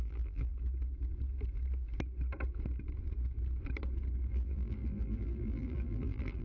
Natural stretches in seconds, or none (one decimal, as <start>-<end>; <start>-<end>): 0.5-4.3